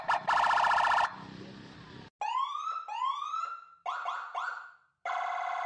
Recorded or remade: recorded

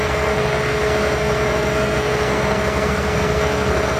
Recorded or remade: remade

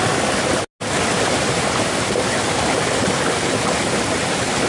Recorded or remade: recorded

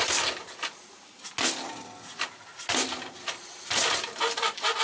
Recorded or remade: recorded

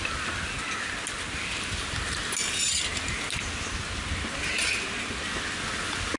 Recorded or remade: recorded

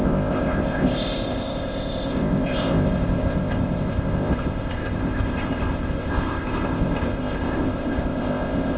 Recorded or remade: remade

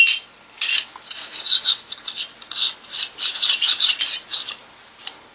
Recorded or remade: recorded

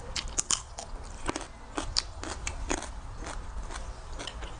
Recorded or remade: recorded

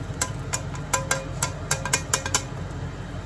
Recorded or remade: recorded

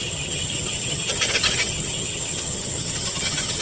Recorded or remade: remade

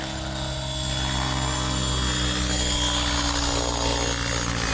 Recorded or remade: recorded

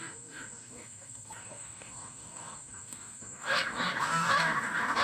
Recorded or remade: remade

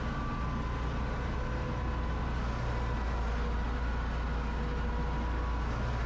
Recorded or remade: recorded